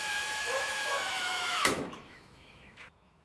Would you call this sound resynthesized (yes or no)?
yes